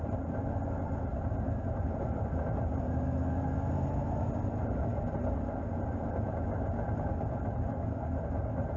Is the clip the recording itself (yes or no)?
yes